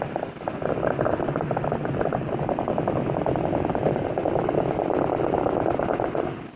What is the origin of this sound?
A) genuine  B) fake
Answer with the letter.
A